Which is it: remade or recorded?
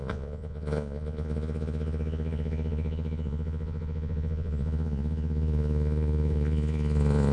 remade